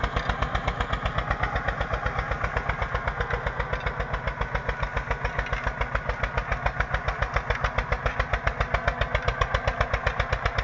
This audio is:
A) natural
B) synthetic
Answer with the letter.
A